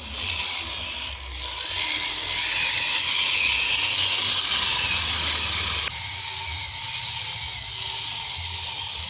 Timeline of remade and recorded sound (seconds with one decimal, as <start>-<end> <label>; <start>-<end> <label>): 0.0-9.1 recorded